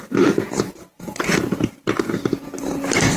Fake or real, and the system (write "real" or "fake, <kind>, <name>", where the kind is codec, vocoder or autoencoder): real